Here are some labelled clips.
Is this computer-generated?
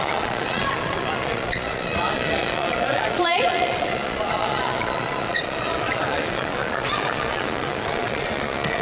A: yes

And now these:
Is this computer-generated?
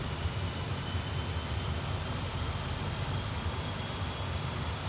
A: no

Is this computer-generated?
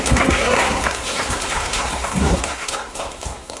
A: yes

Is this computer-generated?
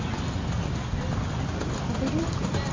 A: no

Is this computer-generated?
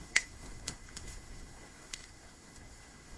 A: yes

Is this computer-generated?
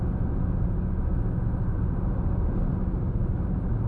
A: no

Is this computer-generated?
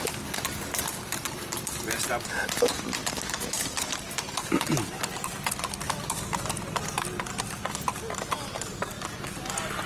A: no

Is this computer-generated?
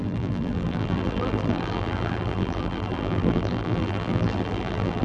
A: yes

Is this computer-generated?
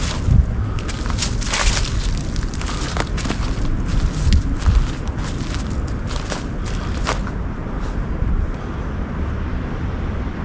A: no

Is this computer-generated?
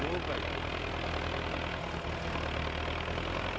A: no